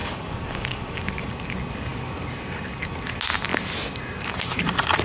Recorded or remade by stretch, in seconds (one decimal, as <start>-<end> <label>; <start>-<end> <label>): 0.0-1.3 remade; 1.3-5.0 recorded